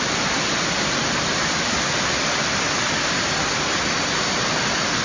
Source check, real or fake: real